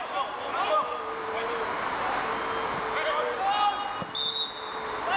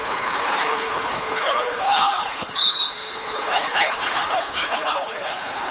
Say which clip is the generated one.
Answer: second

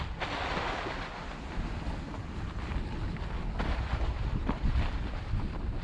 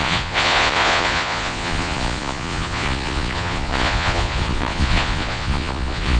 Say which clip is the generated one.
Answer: second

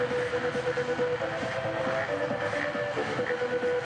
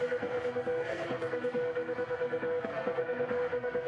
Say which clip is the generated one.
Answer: second